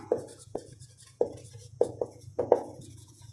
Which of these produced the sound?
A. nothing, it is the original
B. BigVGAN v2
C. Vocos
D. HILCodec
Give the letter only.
C